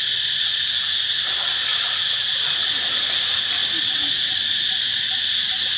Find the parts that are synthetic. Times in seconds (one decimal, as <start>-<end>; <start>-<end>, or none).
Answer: 1.7-2.3; 3.6-5.8